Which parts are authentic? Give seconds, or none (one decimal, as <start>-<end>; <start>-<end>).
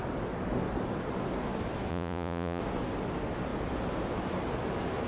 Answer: 0.0-1.9; 2.6-5.1